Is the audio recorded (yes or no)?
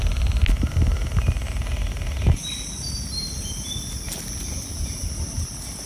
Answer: yes